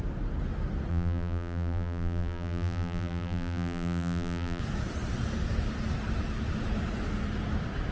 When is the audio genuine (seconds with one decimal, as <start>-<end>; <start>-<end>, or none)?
0.0-0.9; 4.6-7.9